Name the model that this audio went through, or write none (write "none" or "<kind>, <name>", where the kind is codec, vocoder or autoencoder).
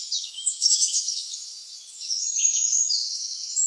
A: autoencoder, DAC-VAE